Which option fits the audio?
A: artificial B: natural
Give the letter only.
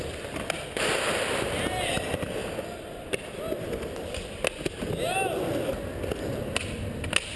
B